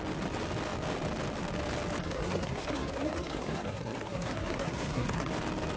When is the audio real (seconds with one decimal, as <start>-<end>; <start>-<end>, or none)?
0.0-2.0; 5.3-5.8

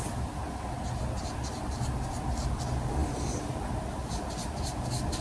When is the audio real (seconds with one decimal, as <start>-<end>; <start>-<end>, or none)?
0.0-5.2

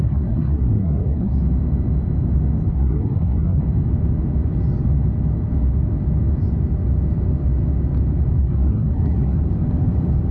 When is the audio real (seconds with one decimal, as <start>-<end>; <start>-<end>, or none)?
1.4-2.7; 3.6-8.4; 9.4-10.3

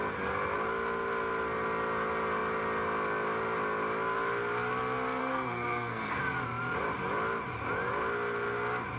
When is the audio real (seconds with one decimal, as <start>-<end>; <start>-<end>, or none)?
0.0-5.2; 6.2-9.0

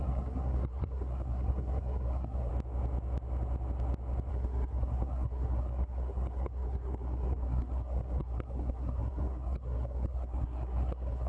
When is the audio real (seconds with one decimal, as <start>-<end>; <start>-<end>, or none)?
2.5-4.3

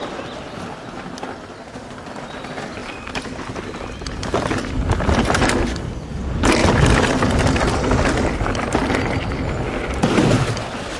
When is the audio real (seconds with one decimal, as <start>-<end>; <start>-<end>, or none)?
0.0-11.0

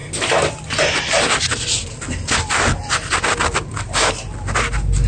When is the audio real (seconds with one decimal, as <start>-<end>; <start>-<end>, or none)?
0.0-5.1

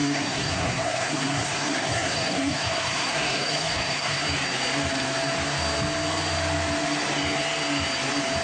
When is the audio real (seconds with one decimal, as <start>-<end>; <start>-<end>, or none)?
4.2-8.4